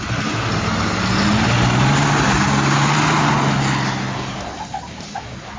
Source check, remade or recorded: recorded